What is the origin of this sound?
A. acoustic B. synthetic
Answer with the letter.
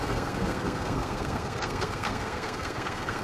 B